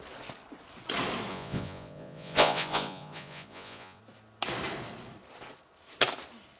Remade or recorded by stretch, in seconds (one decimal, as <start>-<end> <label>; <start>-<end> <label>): 0.0-1.3 recorded; 1.3-4.0 remade; 4.0-6.6 recorded